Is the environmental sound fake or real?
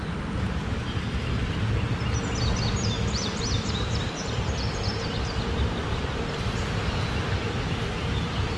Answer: real